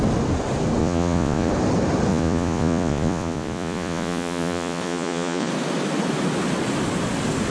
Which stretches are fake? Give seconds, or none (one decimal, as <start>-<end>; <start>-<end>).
0.8-1.5; 2.1-5.5